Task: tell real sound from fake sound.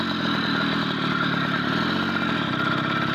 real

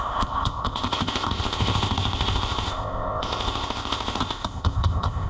fake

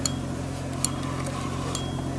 real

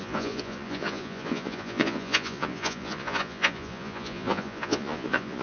fake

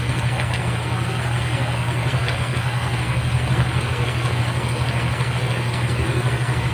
fake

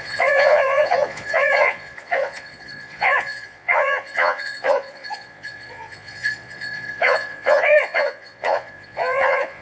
fake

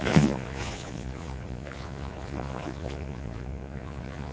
fake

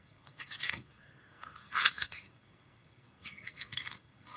fake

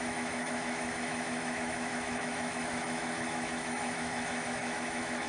fake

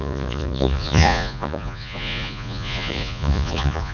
fake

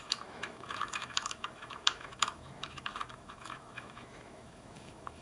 fake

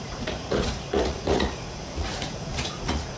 fake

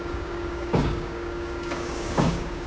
fake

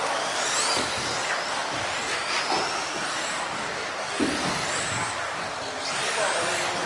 real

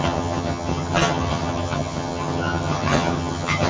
fake